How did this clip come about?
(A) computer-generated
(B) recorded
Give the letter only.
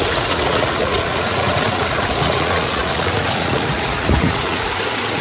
A